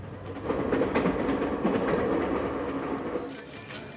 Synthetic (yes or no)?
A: no